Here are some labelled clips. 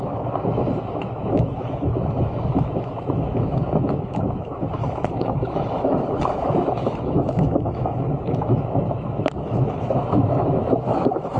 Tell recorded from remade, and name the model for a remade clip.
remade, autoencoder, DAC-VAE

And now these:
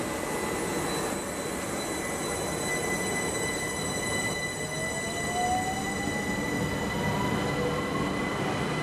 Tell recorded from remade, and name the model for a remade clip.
recorded